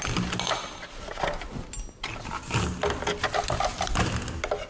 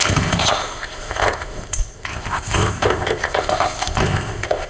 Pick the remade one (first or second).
second